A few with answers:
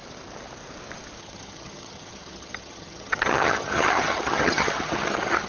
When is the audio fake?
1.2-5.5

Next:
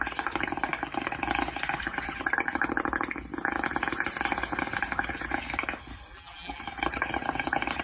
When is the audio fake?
6.1-6.6

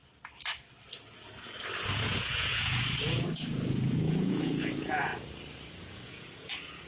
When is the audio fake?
1.9-5.1; 5.8-6.9

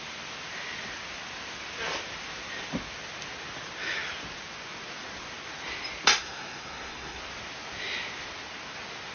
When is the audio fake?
6.2-7.2

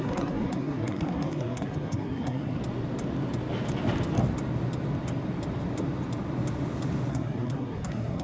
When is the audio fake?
0.0-2.6; 7.1-8.2